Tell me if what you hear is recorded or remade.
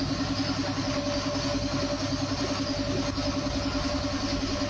recorded